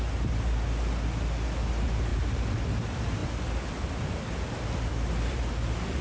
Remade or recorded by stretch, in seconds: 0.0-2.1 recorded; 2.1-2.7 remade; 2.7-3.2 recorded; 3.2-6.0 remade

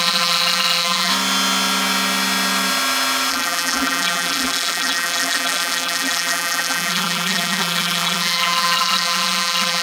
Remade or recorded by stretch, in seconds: 0.0-1.1 remade; 1.1-3.3 recorded; 3.3-9.8 remade